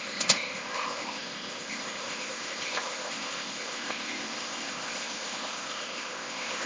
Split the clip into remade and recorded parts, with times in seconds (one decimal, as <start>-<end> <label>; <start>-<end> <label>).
0.0-6.7 remade